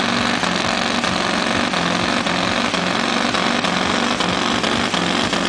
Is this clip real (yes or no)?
yes